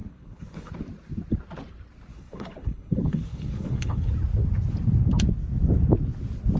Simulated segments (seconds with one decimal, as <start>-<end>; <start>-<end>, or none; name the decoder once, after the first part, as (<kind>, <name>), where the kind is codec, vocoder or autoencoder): 0.0-0.7 (codec, HILCodec); 2.1-4.1